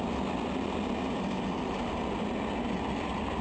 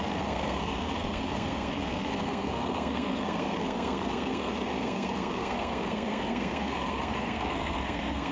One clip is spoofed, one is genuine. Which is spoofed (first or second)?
second